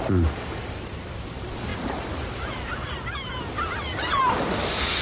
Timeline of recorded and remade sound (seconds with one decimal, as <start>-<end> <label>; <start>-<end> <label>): 0.0-5.0 recorded